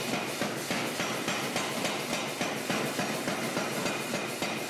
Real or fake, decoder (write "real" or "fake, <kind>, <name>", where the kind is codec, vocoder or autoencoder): real